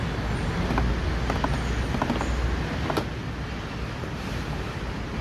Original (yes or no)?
yes